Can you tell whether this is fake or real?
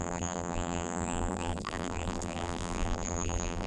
fake